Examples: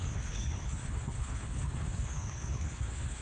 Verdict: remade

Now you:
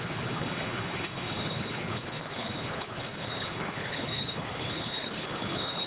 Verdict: remade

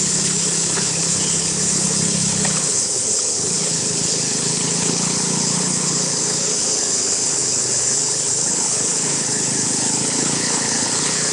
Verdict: remade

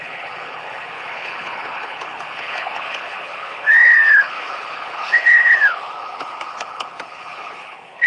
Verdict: remade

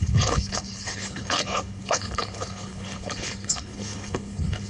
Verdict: remade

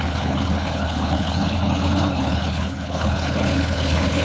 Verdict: remade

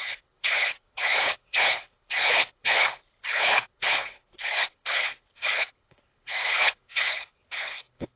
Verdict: remade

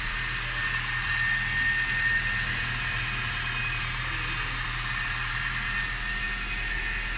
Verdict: recorded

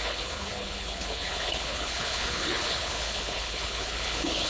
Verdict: remade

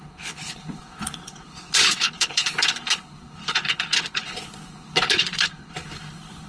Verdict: remade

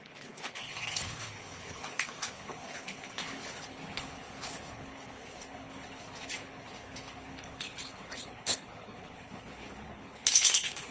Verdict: remade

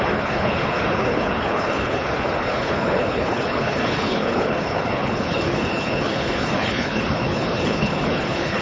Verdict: remade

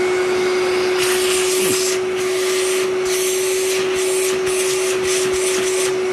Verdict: recorded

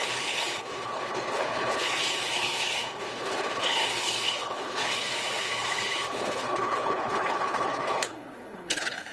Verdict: remade